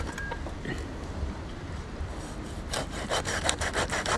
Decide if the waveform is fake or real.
fake